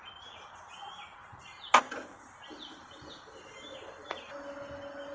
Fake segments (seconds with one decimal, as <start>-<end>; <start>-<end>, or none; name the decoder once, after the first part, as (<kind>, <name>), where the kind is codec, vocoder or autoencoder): none